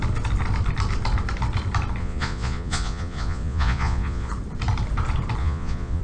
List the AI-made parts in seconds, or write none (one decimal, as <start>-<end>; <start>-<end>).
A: 2.0-4.3; 5.4-6.0